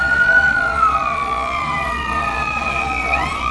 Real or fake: fake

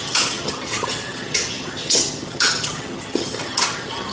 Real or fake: fake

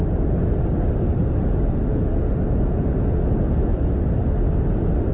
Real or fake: real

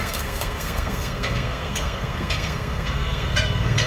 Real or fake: fake